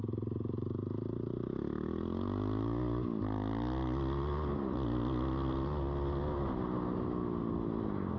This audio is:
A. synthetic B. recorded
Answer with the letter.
B